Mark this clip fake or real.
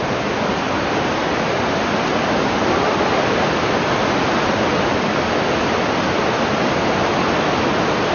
real